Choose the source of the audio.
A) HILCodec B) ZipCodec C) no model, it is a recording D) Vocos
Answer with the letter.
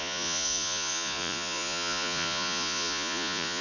D